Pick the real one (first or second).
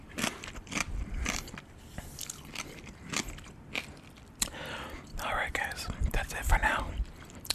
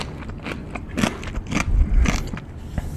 second